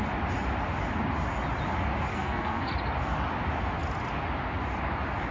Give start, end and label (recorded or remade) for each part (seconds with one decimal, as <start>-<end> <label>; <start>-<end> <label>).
0.0-2.1 recorded; 2.1-2.7 remade; 2.7-5.3 recorded